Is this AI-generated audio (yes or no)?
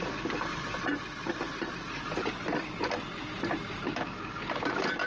no